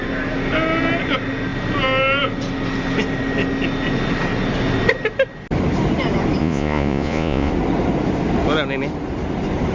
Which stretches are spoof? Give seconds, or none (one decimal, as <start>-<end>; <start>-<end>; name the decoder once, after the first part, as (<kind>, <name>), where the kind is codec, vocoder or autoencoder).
6.4-7.5 (vocoder, Vocos)